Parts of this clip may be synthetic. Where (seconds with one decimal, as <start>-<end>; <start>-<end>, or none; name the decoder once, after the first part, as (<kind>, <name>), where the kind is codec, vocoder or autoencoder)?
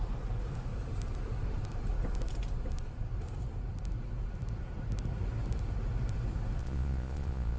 6.6-7.6 (vocoder, Vocos)